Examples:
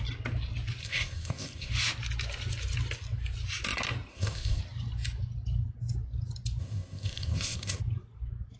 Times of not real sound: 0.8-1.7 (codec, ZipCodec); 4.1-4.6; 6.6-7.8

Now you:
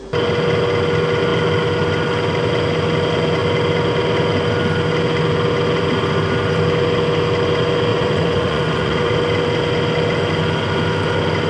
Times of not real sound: 7.9-9.1 (vocoder, Vocos)

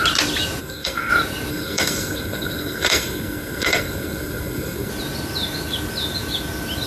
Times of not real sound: 0.6-1.1 (codec, SNAC); 1.5-4.9

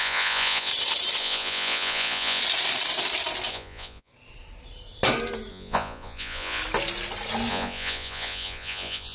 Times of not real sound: 0.0-0.7 (vocoder, Vocos); 1.2-2.4; 3.5-4.1; 5.5-6.6; 7.5-9.1

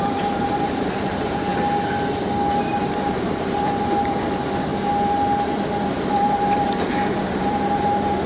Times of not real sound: 0.0-1.5 (vocoder, BigVGAN v2); 2.8-4.7; 5.9-8.3

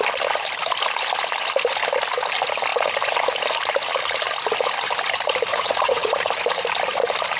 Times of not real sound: 5.5-6.1 (vocoder, WaveNeXt)